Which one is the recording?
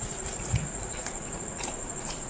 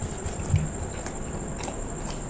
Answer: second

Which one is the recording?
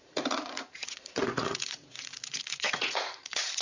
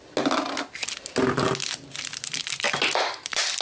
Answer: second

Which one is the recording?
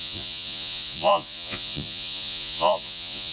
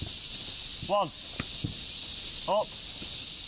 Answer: second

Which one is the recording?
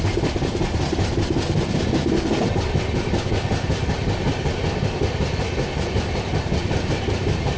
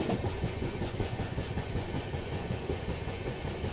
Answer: first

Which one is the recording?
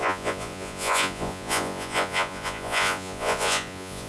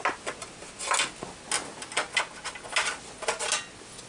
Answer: second